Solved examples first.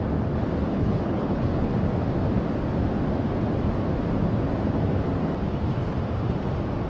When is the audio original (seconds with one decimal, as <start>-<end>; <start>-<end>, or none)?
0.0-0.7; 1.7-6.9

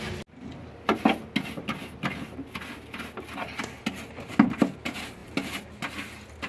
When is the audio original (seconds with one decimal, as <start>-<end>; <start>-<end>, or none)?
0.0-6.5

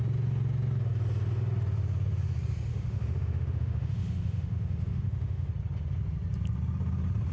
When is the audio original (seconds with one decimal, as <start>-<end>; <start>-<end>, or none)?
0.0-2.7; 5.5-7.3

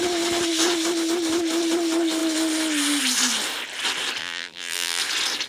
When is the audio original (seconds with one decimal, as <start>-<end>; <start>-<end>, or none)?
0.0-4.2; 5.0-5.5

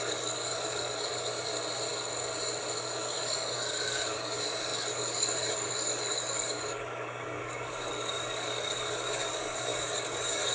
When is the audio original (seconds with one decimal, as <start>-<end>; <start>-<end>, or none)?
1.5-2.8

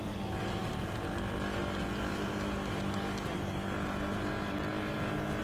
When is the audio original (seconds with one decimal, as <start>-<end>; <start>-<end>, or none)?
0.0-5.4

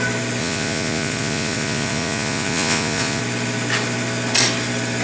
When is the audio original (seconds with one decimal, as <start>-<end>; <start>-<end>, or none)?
0.0-0.4; 3.2-5.0